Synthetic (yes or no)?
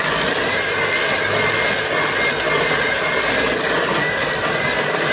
no